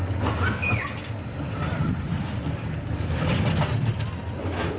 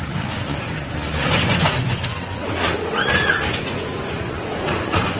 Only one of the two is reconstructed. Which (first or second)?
second